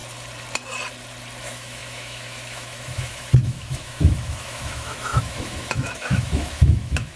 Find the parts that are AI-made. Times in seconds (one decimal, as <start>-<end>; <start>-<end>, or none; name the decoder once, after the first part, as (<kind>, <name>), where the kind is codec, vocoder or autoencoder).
1.4-7.2 (autoencoder, DAC-VAE)